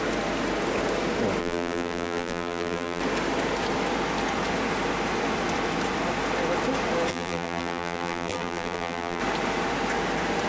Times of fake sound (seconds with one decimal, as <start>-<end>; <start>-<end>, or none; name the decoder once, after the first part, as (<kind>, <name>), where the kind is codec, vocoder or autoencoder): 1.4-3.0 (vocoder, BigVGAN v2); 7.1-9.2

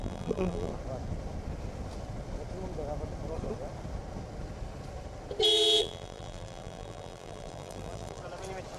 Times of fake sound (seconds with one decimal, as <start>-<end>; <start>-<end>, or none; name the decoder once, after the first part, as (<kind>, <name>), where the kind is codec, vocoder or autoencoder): 0.0-0.7 (vocoder, BigVGAN v2); 5.8-8.2

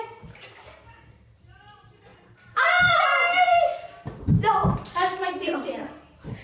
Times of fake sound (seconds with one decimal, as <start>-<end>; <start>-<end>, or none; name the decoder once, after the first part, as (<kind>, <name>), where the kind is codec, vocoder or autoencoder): 2.1-2.9 (vocoder, BigVGAN v2)